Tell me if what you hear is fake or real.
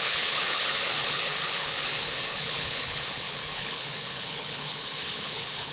fake